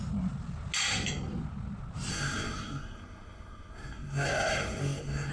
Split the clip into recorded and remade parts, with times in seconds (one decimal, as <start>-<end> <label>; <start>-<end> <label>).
0.0-2.1 recorded; 2.1-5.3 remade